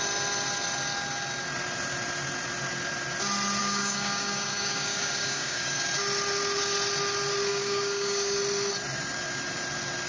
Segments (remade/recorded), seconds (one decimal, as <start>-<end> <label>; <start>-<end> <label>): 0.0-3.6 recorded; 3.6-5.7 remade; 5.7-7.5 recorded; 7.5-8.4 remade; 8.4-10.1 recorded

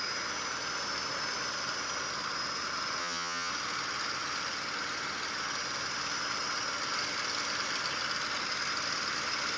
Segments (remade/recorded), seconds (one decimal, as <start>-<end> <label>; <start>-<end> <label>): 0.0-3.0 recorded; 3.0-3.5 remade; 3.5-9.6 recorded

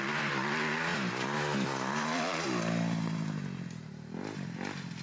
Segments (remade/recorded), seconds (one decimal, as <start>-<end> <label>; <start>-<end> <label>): 0.0-5.0 recorded

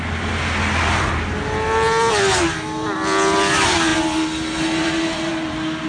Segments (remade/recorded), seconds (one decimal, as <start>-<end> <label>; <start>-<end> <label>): 0.0-5.9 recorded

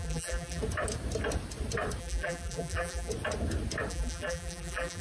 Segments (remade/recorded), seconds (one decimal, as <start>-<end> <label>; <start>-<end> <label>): 0.0-0.6 remade; 0.6-2.0 recorded; 2.0-3.1 remade; 3.1-3.9 recorded; 3.9-5.0 remade

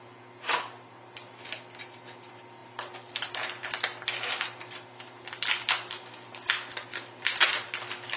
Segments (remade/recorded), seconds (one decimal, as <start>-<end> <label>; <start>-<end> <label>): 0.0-8.2 recorded